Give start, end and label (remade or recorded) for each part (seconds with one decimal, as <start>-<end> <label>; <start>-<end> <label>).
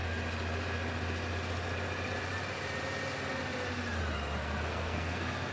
0.0-4.4 recorded; 4.4-5.5 remade